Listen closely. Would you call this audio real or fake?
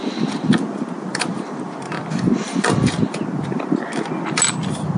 real